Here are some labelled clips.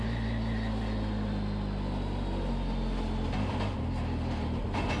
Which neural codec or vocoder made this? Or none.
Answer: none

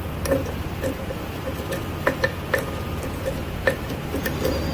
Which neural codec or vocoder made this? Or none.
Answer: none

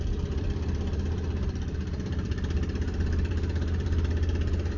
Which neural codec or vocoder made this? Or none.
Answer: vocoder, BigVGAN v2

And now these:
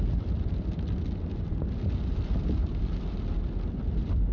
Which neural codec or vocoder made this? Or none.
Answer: vocoder, BigVGAN v2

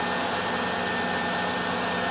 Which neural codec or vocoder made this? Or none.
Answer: none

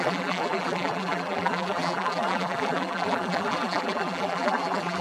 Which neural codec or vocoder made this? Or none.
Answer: vocoder, BigVGAN v2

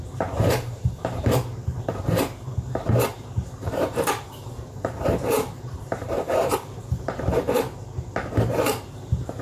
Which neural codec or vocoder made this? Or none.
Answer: vocoder, BigVGAN v2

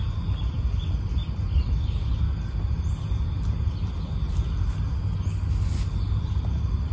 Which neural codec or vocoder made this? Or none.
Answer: none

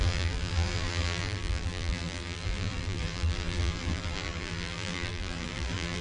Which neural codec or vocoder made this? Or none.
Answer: vocoder, BigVGAN v2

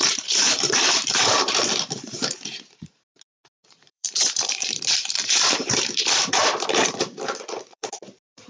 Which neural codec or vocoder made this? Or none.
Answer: vocoder, BigVGAN v2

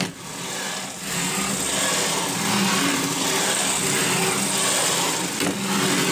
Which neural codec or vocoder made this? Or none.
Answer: none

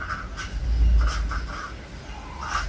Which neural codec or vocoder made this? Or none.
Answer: none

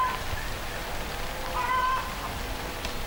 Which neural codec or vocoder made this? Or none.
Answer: none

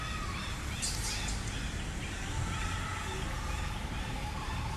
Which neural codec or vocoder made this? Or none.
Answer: none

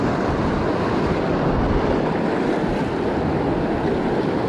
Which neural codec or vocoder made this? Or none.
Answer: none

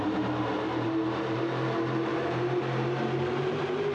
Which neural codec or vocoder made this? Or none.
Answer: vocoder, BigVGAN v2